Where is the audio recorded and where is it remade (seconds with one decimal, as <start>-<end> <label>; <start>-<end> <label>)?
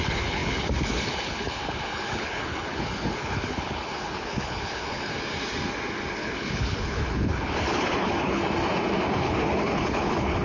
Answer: 0.0-5.1 remade; 5.1-6.1 recorded; 6.1-8.4 remade; 8.4-9.1 recorded; 9.1-10.4 remade